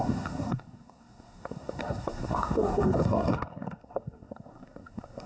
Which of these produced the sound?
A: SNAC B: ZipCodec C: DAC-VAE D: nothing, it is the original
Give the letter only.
A